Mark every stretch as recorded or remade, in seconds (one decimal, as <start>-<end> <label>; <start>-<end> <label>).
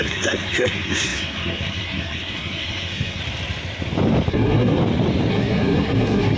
0.0-3.2 remade; 3.2-4.3 recorded; 4.3-4.8 remade; 4.8-5.3 recorded; 5.3-6.4 remade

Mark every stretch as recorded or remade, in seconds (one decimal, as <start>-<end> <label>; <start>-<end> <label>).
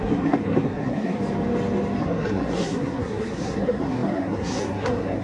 0.0-1.2 remade; 1.2-2.0 recorded; 2.0-5.2 remade